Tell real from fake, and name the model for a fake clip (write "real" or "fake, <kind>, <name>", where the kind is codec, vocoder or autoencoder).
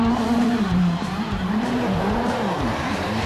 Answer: fake, vocoder, BigVGAN v2